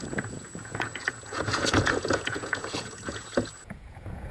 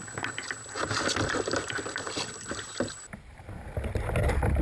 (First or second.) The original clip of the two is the second